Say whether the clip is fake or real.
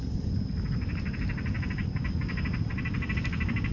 real